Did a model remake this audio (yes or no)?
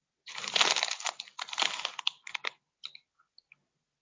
no